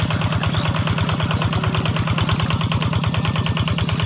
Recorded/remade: recorded